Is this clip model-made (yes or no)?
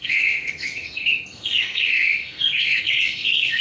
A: yes